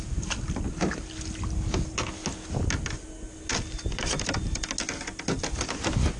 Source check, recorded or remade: recorded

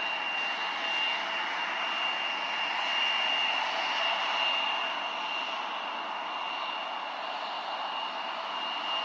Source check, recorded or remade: recorded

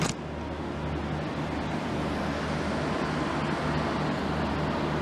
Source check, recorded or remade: recorded